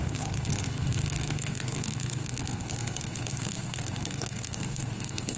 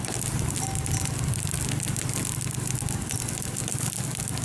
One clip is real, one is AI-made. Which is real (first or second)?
second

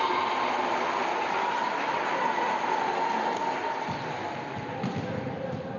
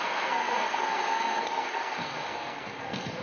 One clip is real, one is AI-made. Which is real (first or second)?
first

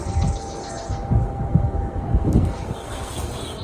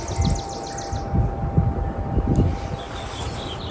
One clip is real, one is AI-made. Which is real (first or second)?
second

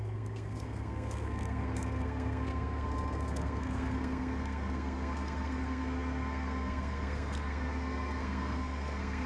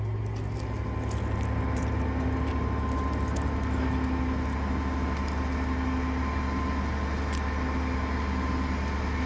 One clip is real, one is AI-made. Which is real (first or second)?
second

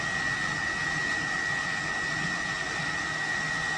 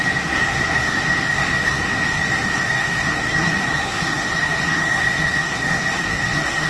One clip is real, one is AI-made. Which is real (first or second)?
first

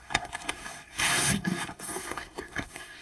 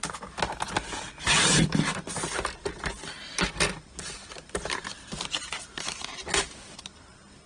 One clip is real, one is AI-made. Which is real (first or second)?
second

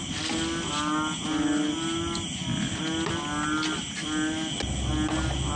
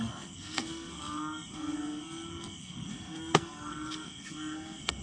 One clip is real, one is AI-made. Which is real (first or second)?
first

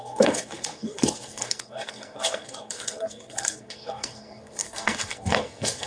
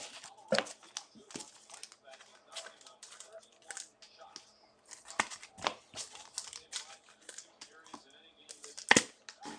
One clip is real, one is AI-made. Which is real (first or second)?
second